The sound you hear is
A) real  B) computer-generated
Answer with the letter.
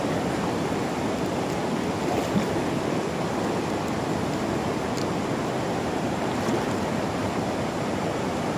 A